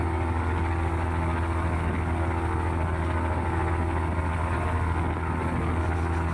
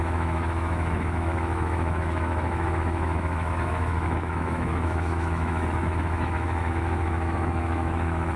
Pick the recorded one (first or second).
first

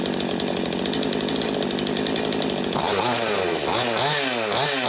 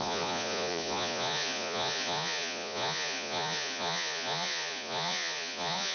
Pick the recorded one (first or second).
first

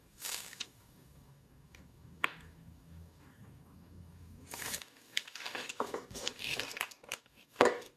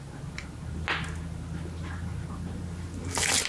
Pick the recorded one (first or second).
second